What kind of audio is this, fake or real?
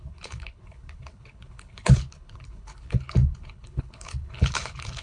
fake